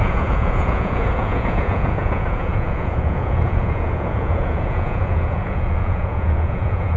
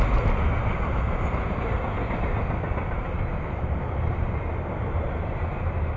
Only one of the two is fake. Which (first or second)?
first